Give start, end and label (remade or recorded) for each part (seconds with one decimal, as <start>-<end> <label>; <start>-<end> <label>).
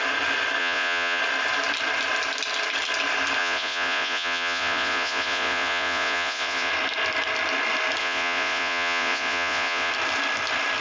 0.0-0.6 recorded; 0.6-1.2 remade; 1.2-3.4 recorded; 3.4-6.7 remade; 6.7-8.0 recorded; 8.0-9.9 remade; 9.9-10.8 recorded